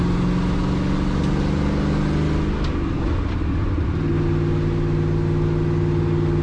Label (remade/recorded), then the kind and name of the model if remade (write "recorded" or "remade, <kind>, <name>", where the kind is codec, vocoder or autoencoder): recorded